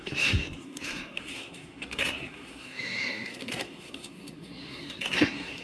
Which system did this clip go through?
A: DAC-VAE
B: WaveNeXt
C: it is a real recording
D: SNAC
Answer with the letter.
D